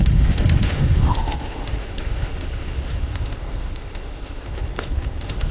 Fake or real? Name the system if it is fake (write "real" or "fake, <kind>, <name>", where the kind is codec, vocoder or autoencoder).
fake, autoencoder, DAC-VAE